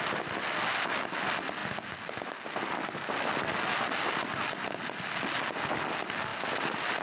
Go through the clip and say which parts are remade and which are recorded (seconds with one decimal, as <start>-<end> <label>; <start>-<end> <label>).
0.0-7.0 recorded